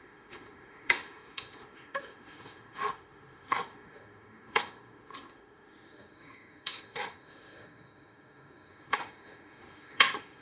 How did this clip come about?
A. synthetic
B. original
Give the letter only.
A